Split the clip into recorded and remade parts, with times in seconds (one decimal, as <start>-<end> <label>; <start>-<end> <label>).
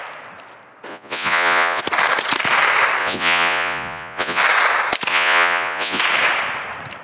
0.0-0.9 recorded; 0.9-1.8 remade; 1.8-3.0 recorded; 3.0-4.4 remade; 4.4-5.1 recorded; 5.1-6.0 remade; 6.0-7.0 recorded